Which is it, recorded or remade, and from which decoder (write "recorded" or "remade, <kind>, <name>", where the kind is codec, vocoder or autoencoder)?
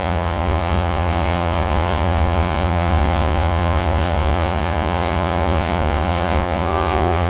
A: remade, vocoder, Vocos